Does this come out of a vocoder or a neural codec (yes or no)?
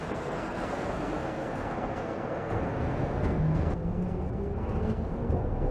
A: yes